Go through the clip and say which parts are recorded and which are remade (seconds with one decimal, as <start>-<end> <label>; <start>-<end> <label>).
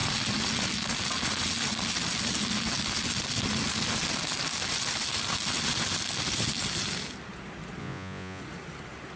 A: 0.0-7.8 recorded; 7.8-8.4 remade; 8.4-9.2 recorded